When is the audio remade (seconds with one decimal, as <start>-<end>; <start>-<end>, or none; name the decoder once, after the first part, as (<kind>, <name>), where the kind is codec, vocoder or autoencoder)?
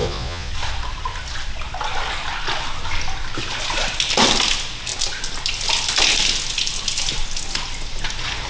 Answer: 0.0-0.5 (vocoder, Vocos)